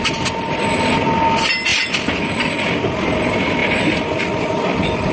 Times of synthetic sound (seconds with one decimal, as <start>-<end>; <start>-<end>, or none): none